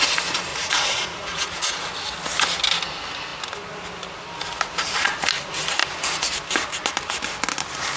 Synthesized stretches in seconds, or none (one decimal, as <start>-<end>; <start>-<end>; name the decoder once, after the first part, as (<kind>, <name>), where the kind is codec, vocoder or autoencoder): 0.5-1.9 (vocoder, Vocos)